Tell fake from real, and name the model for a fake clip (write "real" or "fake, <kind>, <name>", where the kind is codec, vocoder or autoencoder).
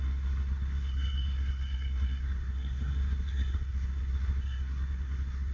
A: fake, codec, SNAC